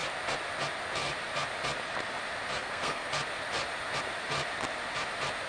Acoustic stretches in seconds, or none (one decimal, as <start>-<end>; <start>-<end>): 0.0-2.5; 3.1-5.5